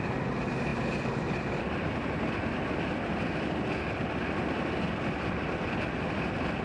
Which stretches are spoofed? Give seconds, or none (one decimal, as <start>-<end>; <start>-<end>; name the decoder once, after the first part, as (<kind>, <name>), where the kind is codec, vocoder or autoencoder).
none